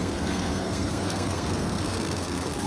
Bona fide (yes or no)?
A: no